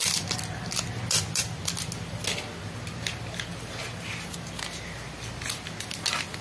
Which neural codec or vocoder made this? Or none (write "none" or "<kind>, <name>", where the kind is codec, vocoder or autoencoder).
none